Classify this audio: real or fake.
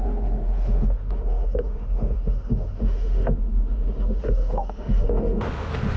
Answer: fake